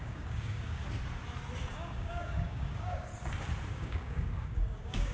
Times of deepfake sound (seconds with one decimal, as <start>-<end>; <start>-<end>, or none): 0.0-0.8; 1.7-3.1; 3.7-5.1